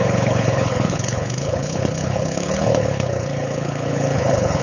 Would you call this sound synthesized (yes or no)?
yes